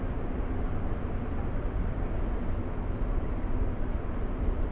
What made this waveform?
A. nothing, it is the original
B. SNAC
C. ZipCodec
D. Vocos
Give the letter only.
A